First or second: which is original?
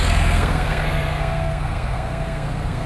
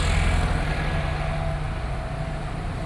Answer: second